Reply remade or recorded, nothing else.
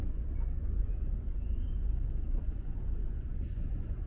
remade